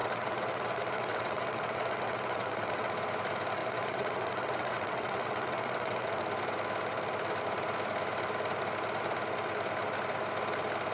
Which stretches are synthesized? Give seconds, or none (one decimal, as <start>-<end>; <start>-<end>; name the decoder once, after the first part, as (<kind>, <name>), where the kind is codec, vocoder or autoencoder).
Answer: 0.0-2.9 (vocoder, WaveNeXt); 3.6-6.2